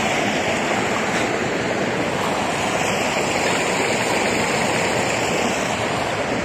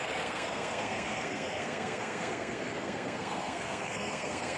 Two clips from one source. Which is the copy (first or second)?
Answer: second